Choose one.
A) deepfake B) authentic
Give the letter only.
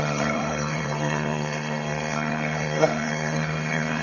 A